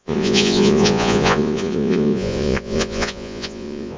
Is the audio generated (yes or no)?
yes